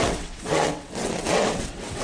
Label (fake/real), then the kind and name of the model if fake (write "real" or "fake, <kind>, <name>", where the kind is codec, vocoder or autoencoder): fake, vocoder, WaveNeXt